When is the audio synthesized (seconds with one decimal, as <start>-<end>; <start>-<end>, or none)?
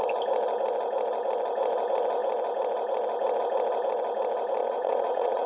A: 4.6-5.5